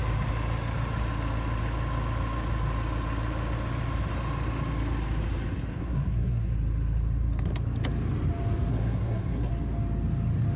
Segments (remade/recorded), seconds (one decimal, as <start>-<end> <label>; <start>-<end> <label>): 0.0-5.7 recorded; 5.7-6.5 remade; 6.5-8.7 recorded; 8.7-9.5 remade; 9.5-10.6 recorded